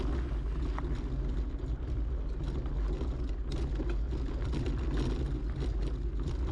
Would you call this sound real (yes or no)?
yes